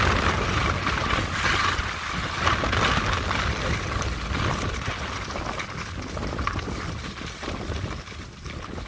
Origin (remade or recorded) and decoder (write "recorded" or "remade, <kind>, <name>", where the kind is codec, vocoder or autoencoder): recorded